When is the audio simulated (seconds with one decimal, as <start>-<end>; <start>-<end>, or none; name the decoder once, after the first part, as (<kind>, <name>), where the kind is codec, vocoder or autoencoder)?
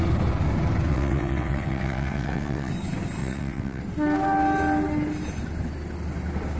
0.9-2.7 (vocoder, WaveNeXt); 3.2-3.8